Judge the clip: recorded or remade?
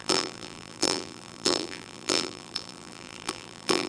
remade